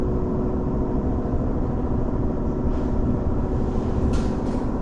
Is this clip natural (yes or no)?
yes